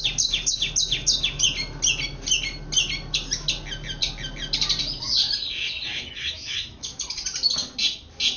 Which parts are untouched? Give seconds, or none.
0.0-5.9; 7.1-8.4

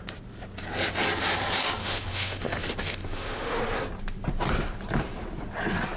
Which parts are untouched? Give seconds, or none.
0.0-1.8; 3.6-6.0

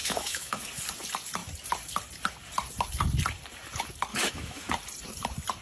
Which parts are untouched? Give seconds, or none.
0.6-4.1; 4.7-5.6

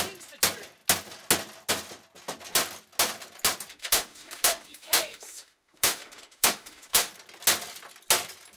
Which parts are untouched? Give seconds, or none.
0.0-3.7; 7.1-8.6

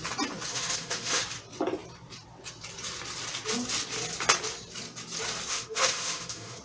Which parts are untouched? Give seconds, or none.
0.0-0.5; 1.2-5.5

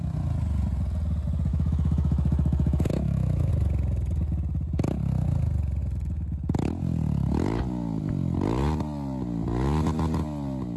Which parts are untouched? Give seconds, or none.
0.0-1.5; 3.5-10.8